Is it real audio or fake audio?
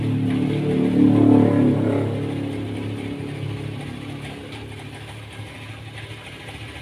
real